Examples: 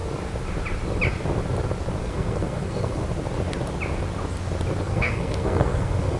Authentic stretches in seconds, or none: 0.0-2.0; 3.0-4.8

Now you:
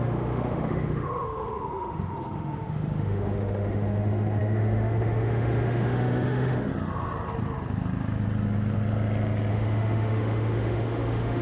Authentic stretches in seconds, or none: 6.7-9.5